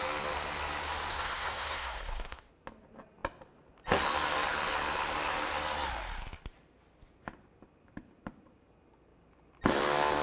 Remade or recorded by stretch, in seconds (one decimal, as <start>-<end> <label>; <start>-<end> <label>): 0.0-1.1 recorded; 1.1-2.5 remade; 2.5-10.2 recorded

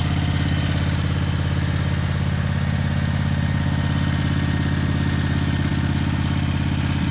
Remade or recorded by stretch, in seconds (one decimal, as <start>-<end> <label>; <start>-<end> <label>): 0.0-7.1 recorded

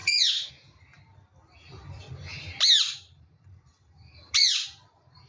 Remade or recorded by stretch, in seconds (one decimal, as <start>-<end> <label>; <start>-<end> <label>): 0.0-0.5 remade; 0.5-5.3 recorded

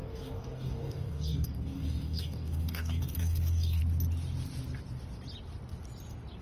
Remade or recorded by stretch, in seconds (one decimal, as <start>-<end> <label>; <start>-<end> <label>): 0.0-3.8 remade; 3.8-6.4 recorded

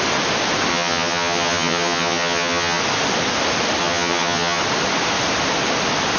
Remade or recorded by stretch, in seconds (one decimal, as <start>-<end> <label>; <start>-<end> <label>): 0.0-0.7 recorded; 0.7-2.8 remade; 2.8-3.8 recorded; 3.8-4.6 remade; 4.6-6.2 recorded

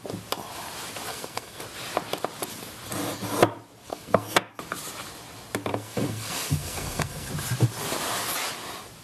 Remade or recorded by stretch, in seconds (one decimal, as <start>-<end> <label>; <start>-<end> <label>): 0.0-1.1 recorded; 1.1-1.6 remade; 1.6-3.9 recorded; 3.9-4.5 remade; 4.5-5.7 recorded; 5.7-7.3 remade; 7.3-9.0 recorded